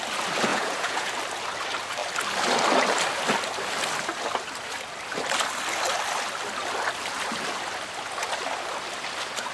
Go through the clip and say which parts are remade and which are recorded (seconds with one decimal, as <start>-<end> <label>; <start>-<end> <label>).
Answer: 0.0-0.5 recorded; 0.5-1.1 remade; 1.1-9.5 recorded